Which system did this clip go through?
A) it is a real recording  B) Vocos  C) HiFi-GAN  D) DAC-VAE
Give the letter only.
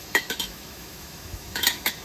D